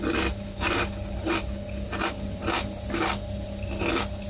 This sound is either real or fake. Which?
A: real